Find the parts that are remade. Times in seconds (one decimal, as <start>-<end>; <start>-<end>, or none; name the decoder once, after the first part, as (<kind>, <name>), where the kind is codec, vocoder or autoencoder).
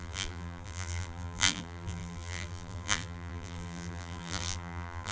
0.0-5.1 (vocoder, BigVGAN v2)